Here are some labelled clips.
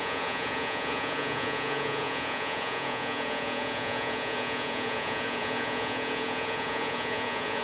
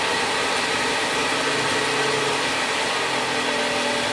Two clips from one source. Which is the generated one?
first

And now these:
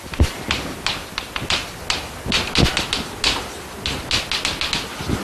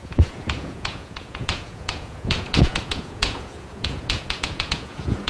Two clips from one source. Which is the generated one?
second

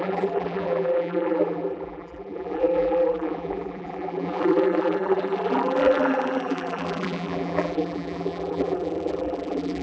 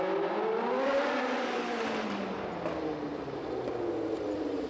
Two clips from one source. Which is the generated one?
first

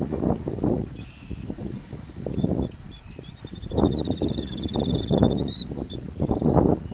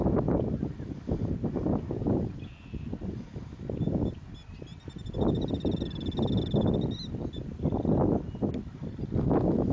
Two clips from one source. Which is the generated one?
first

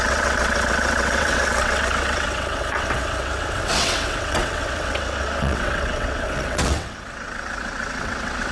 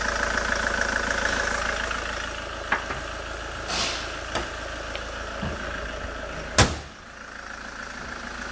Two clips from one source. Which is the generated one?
first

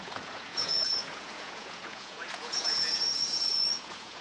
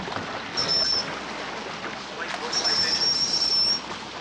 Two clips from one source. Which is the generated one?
first